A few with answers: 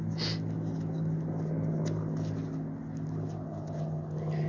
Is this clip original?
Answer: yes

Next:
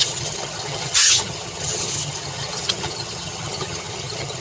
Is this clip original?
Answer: no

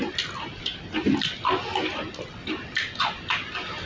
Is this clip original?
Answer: yes